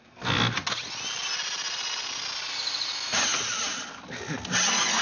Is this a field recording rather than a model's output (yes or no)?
yes